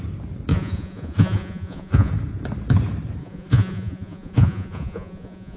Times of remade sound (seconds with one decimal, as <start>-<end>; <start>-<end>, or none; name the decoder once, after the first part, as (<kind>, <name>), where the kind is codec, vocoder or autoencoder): 0.5-2.1 (vocoder, Vocos); 3.2-5.6